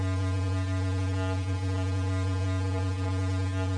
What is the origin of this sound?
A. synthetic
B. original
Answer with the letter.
A